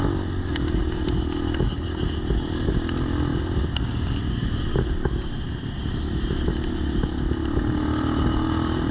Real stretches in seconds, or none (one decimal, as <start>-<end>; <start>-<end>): 0.0-8.9